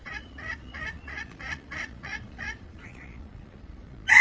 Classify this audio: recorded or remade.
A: remade